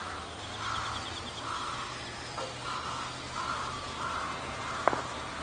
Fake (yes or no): no